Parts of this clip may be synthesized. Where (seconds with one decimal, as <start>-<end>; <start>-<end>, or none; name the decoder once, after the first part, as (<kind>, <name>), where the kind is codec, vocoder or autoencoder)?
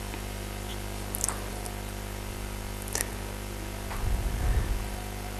none